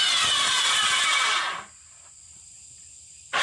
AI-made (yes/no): no